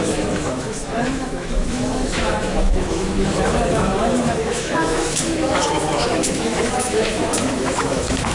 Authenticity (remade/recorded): remade